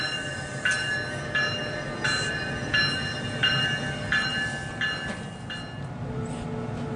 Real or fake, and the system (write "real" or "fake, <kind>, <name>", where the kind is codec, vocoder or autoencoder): real